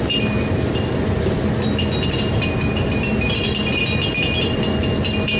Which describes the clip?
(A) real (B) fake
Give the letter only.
A